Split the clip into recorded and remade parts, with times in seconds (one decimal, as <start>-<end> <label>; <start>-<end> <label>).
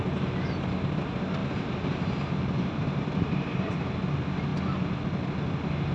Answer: 0.0-1.4 recorded; 1.4-4.0 remade; 4.0-5.9 recorded